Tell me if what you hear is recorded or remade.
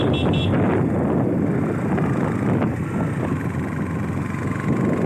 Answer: recorded